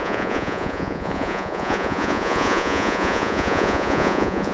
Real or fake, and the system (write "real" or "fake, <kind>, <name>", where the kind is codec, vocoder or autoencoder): fake, vocoder, Vocos